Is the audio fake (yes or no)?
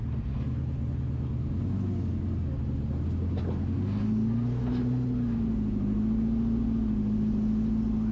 no